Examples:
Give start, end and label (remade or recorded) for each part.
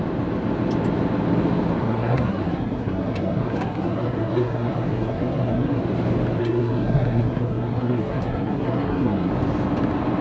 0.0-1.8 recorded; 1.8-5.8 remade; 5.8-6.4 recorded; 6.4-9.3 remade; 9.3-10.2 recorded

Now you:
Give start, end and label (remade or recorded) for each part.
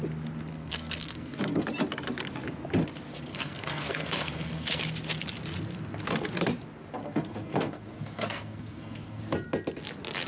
0.0-0.5 recorded; 0.5-1.6 remade; 1.6-3.3 recorded; 3.3-4.8 remade; 4.8-7.0 recorded; 7.0-9.2 remade; 9.2-10.3 recorded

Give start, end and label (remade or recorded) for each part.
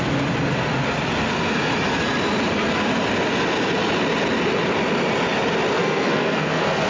0.0-5.8 recorded; 5.8-6.9 remade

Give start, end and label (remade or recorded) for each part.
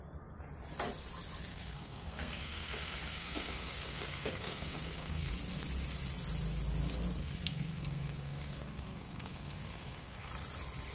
0.0-1.5 recorded; 1.5-5.3 remade; 5.3-7.2 recorded; 7.2-10.3 remade; 10.3-10.9 recorded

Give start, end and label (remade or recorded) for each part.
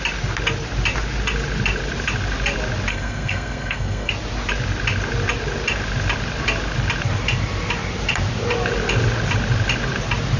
0.0-2.9 recorded; 2.9-4.1 remade; 4.1-10.4 recorded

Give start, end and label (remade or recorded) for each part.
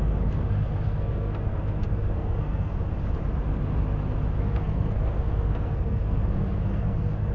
0.0-2.7 remade; 2.7-4.4 recorded; 4.4-7.3 remade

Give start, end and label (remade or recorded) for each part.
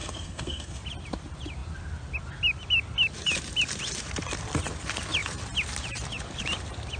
0.0-0.8 remade; 0.8-7.0 recorded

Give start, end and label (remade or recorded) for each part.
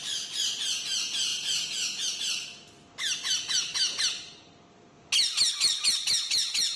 0.0-6.8 recorded